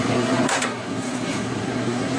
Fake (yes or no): yes